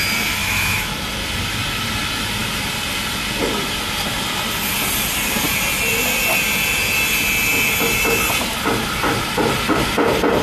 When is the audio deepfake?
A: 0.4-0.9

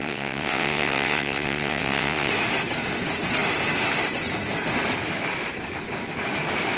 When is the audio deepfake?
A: 0.0-2.3

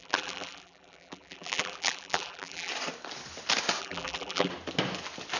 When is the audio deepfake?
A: 0.0-2.7; 3.8-4.5

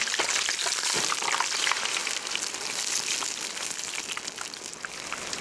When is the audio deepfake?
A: none

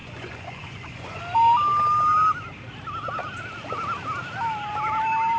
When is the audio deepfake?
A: 0.0-1.2